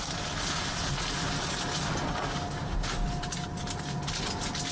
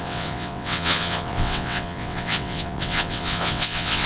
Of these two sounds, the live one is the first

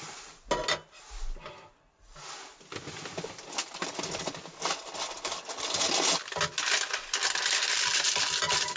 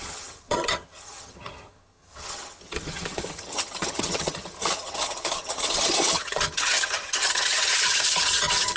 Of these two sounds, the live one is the first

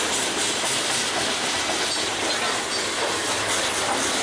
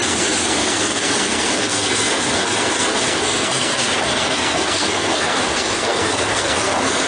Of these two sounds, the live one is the first